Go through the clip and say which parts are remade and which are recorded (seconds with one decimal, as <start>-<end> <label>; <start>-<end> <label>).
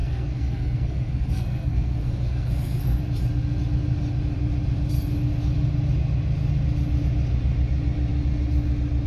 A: 0.0-3.0 remade; 3.0-9.1 recorded